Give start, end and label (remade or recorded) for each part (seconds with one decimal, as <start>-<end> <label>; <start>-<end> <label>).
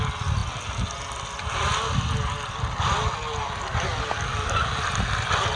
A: 0.0-5.6 recorded